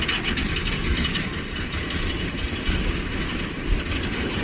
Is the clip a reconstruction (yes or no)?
no